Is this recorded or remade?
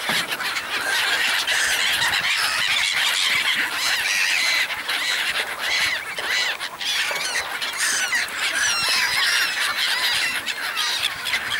recorded